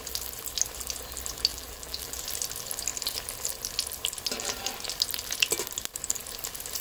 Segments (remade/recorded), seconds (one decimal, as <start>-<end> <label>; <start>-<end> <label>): 0.0-1.5 recorded; 1.5-2.2 remade; 2.2-6.8 recorded